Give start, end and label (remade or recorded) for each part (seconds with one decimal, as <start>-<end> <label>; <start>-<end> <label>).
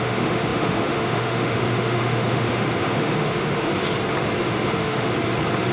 0.0-3.7 remade; 3.7-4.4 recorded; 4.4-5.1 remade; 5.1-5.7 recorded